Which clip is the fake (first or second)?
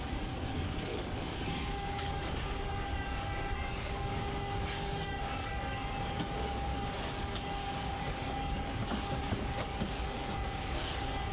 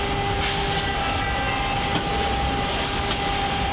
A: first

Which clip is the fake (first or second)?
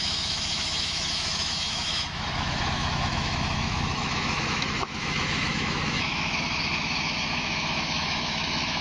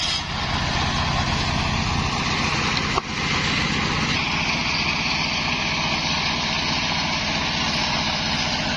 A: first